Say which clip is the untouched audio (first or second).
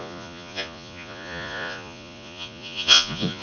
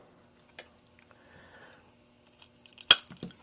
second